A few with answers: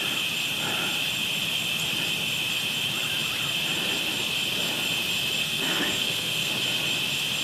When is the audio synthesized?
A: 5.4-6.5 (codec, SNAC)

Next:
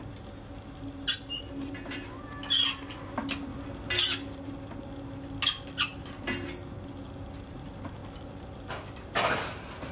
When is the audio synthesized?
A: none

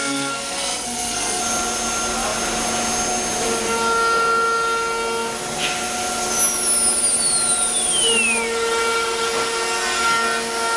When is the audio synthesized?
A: 0.0-1.4 (codec, SNAC)

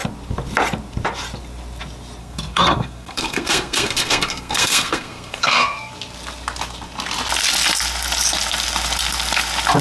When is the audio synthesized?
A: 2.2-5.9 (codec, SNAC)

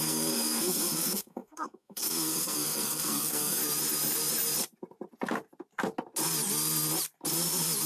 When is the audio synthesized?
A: 0.0-3.6 (codec, SNAC)

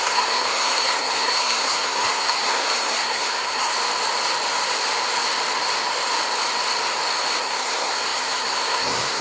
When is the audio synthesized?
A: 0.0-3.7 (codec, SNAC); 7.4-9.2

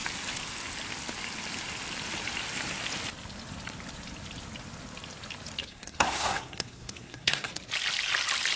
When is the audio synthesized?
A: 5.6-7.5 (codec, SNAC)

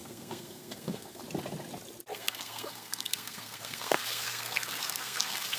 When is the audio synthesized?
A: 0.0-1.2 (codec, SNAC); 2.1-5.6